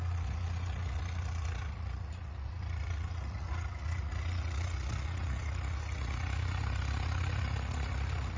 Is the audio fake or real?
fake